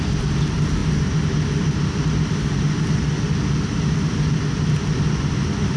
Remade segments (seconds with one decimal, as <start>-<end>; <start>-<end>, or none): none